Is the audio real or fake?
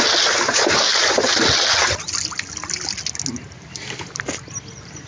real